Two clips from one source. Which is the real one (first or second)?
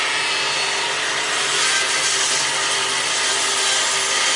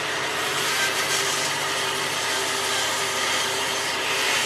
first